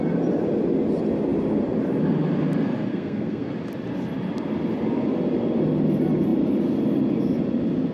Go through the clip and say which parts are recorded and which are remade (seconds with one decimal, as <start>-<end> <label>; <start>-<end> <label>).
0.0-2.9 recorded; 2.9-3.5 remade; 3.5-7.9 recorded